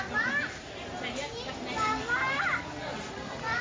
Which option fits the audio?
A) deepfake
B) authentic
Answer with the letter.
B